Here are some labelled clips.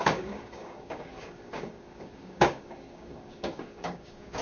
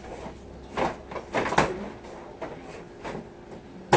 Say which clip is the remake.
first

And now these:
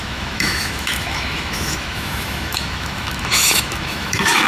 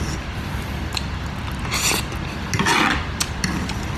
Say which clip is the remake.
first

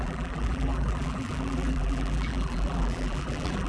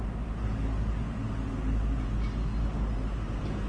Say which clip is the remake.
first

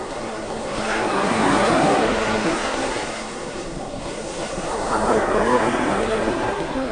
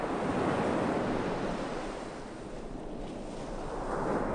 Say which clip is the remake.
first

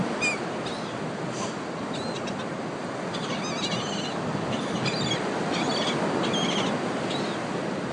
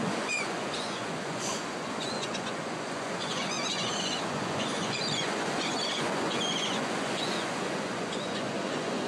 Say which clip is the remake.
second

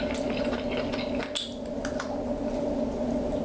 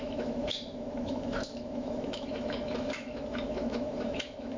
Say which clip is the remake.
second